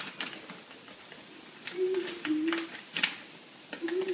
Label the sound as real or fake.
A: real